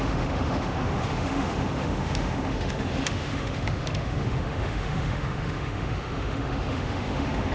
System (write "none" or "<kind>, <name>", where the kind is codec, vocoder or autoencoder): autoencoder, DAC-VAE